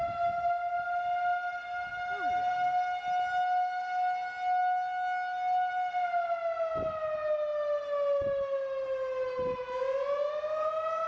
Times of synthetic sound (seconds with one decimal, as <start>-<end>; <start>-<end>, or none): none